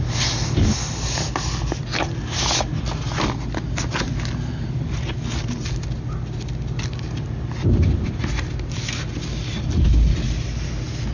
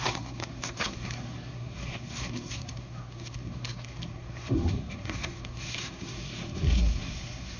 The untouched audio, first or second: first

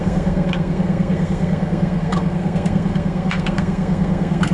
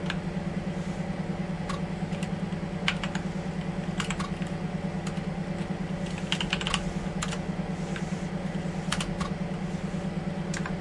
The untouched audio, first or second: second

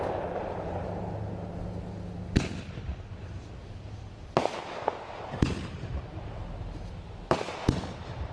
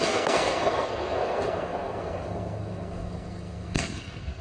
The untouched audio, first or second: first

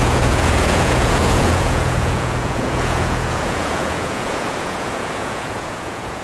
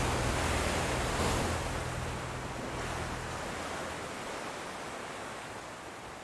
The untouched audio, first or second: second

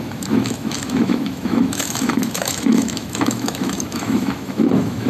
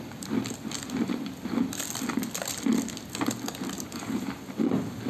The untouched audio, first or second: second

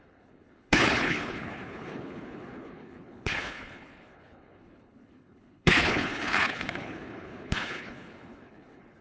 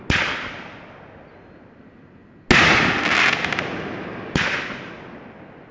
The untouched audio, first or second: second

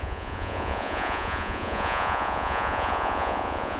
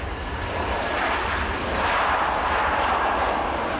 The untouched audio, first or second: second